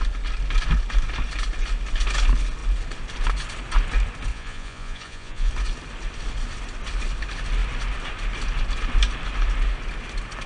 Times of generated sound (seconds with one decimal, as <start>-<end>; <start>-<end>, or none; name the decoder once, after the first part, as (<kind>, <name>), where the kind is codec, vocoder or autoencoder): 4.3-5.5 (vocoder, Vocos)